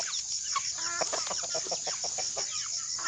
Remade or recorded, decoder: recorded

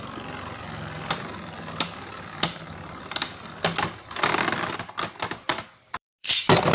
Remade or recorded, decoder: recorded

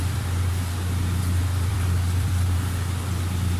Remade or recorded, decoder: remade, vocoder, BigVGAN v2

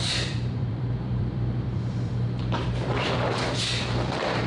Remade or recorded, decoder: remade, vocoder, BigVGAN v2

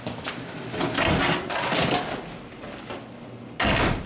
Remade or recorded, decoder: recorded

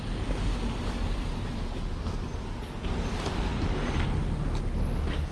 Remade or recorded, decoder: recorded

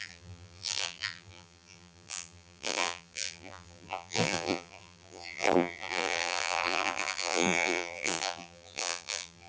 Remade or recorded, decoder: remade, vocoder, BigVGAN v2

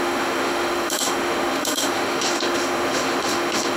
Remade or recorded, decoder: remade, autoencoder, DAC-VAE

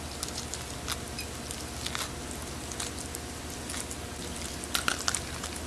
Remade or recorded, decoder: recorded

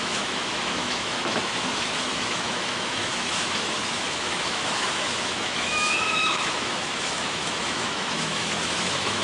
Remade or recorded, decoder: remade, autoencoder, DAC-VAE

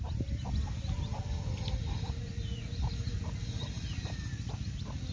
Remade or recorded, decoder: recorded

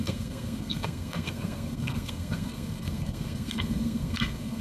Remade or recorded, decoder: remade, codec, SNAC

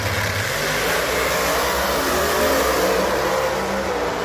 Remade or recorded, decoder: recorded